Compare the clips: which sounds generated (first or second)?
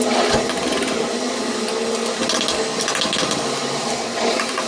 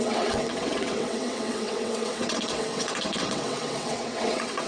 second